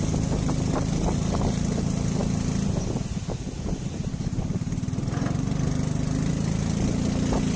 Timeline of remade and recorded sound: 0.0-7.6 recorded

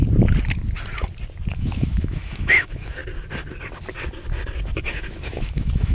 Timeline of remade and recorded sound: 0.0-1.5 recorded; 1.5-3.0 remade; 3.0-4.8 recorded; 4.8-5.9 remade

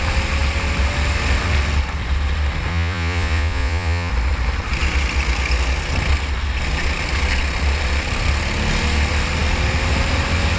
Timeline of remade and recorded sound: 0.0-2.7 recorded; 2.7-4.1 remade; 4.1-10.6 recorded

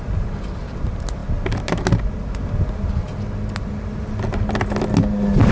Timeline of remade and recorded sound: 0.0-5.5 recorded